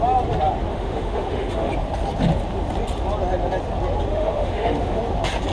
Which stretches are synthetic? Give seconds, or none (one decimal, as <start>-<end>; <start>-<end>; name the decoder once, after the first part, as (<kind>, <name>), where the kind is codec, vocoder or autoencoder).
0.7-1.7 (autoencoder, DAC-VAE); 4.1-5.0